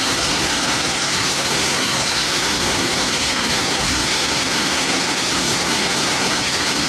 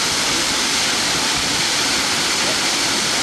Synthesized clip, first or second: first